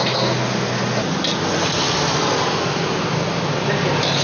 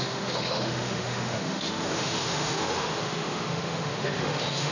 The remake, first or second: second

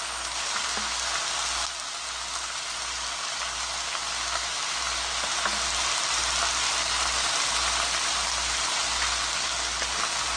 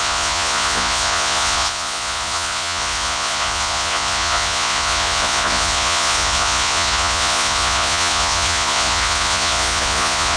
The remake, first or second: second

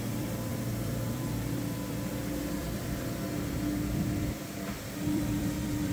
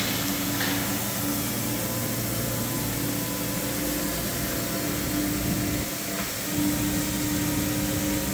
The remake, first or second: first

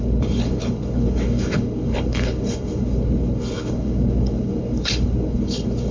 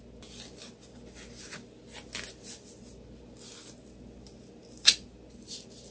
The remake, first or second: first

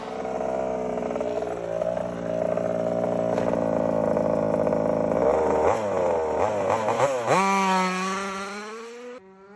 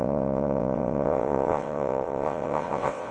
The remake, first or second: second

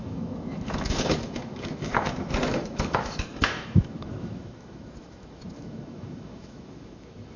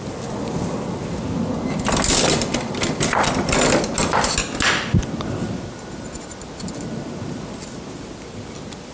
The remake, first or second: first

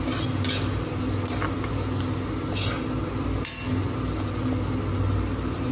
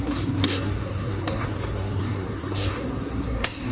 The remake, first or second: second